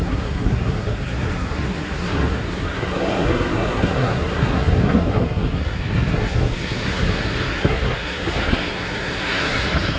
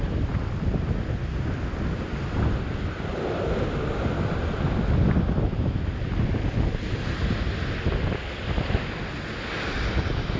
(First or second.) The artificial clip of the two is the first